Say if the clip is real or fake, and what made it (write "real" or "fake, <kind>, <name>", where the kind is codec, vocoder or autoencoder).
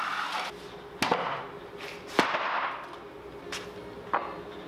real